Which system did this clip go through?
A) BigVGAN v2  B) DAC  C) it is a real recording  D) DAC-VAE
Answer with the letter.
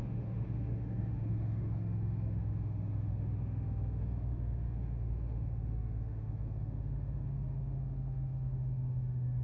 D